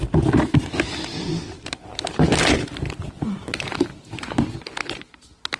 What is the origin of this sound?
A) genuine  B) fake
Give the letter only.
A